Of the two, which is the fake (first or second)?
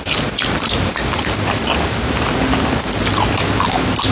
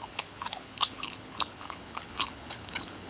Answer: second